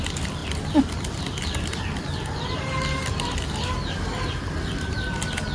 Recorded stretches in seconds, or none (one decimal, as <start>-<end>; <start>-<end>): 0.0-5.5